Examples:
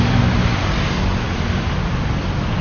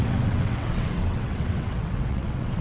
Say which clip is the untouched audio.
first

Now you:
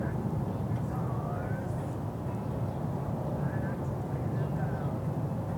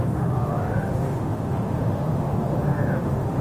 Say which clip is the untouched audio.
first